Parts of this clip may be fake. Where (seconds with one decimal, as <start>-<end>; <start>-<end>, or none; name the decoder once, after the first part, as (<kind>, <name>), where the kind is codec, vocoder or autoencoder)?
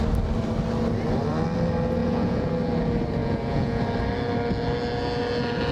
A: 2.0-2.5 (vocoder, Vocos); 3.2-3.8